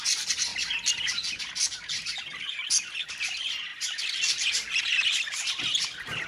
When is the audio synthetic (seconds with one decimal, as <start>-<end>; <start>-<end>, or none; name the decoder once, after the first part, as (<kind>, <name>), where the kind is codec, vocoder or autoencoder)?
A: 0.0-0.5 (vocoder, BigVGAN v2); 1.4-3.7; 5.1-6.3